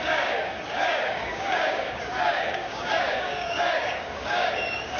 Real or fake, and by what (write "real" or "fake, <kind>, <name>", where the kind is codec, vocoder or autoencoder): fake, codec, DAC